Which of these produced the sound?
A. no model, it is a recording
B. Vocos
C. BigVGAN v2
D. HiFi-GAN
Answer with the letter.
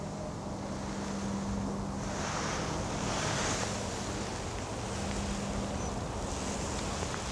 A